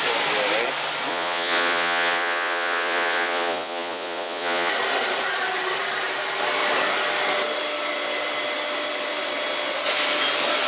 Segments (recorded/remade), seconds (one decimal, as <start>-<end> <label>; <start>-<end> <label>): 0.0-1.1 recorded; 1.1-4.7 remade; 4.7-10.7 recorded